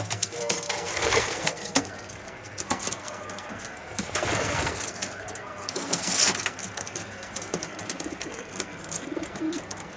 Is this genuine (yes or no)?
no